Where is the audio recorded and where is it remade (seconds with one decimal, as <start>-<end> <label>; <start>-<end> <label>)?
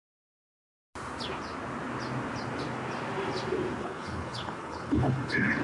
0.0-3.8 recorded; 3.8-5.6 remade